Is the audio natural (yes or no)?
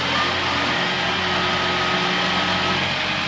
yes